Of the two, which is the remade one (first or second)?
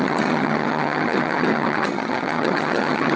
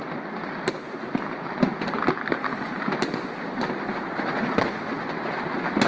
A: first